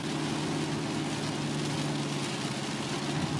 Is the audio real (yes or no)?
yes